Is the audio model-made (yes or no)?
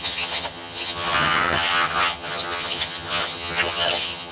yes